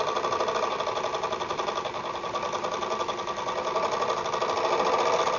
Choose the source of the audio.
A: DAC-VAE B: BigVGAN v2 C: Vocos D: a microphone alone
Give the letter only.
D